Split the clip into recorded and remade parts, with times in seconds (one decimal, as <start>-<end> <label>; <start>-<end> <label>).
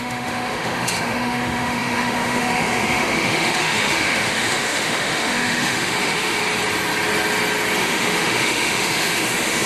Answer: 0.0-6.4 remade; 6.4-7.8 recorded; 7.8-9.7 remade